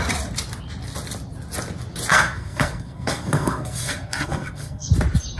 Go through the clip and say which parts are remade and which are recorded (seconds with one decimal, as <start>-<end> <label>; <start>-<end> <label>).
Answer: 0.0-2.1 recorded; 2.1-4.9 remade; 4.9-5.4 recorded